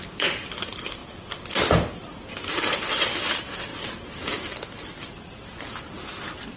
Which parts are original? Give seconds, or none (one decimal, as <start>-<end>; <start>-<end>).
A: 0.0-6.6